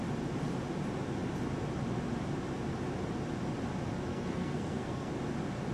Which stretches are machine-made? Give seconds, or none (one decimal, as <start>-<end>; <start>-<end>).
4.1-5.1